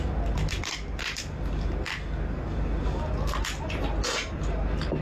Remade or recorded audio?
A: recorded